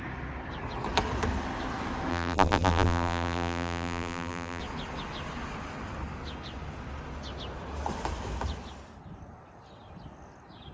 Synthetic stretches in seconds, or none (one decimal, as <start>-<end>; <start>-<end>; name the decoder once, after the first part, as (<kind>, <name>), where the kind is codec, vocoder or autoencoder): 2.1-4.6 (vocoder, BigVGAN v2)